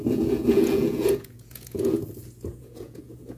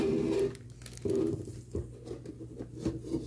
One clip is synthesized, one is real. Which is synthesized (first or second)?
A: first